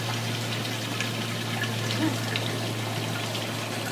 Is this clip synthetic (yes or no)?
no